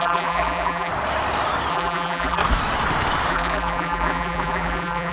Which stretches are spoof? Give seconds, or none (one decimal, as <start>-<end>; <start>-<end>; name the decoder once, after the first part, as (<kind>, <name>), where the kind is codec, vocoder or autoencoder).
0.0-0.9 (vocoder, BigVGAN v2); 1.7-2.4; 3.3-5.1